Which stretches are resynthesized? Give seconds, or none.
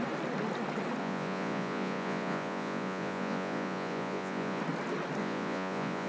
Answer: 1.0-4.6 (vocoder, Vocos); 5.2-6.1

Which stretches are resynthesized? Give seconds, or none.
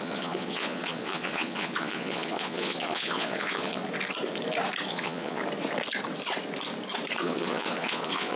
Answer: 0.0-3.8 (vocoder, Vocos); 4.9-5.4; 7.2-8.4